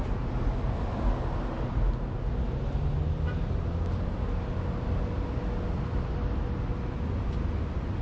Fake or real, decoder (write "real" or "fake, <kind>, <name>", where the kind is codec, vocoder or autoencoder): real